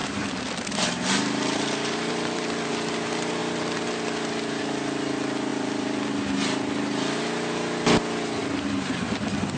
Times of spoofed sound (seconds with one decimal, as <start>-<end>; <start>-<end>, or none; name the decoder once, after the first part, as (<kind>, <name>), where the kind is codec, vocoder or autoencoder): 0.0-2.7 (vocoder, BigVGAN v2); 3.4-3.9; 5.5-6.1; 8.4-8.9